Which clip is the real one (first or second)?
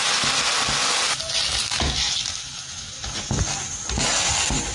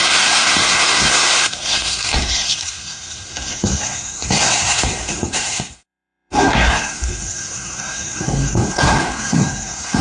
first